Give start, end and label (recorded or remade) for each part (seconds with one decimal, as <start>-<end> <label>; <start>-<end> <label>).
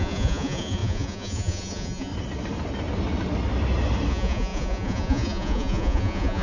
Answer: 0.0-2.1 remade; 2.1-4.1 recorded; 4.1-6.4 remade